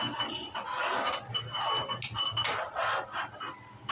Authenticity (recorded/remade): recorded